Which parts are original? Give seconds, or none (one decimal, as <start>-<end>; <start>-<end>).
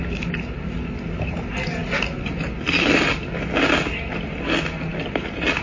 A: 0.0-5.6